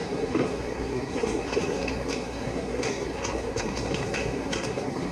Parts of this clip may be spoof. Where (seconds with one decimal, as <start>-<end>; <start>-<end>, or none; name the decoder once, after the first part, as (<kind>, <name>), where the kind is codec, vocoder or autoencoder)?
0.0-5.1 (codec, SNAC)